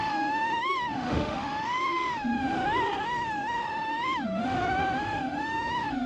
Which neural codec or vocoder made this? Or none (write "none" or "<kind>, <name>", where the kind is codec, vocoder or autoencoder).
autoencoder, DAC-VAE